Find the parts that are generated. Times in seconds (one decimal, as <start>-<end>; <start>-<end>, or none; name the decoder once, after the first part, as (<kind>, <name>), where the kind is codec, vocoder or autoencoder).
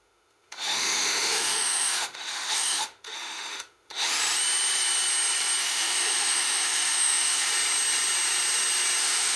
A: 0.0-4.1 (autoencoder, DAC-VAE); 5.6-7.5; 9.0-9.4